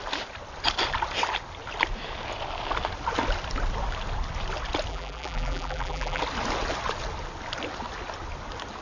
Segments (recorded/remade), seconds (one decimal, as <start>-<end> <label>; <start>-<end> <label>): 0.0-4.9 recorded; 4.9-6.2 remade; 6.2-8.8 recorded